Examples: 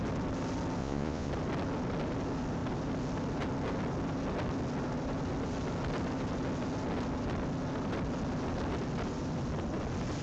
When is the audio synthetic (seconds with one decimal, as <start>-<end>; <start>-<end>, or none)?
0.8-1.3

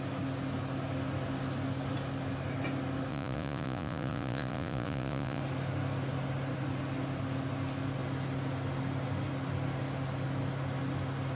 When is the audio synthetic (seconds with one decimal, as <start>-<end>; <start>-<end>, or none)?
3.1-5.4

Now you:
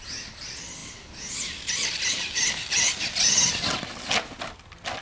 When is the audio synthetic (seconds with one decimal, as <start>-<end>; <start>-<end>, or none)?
none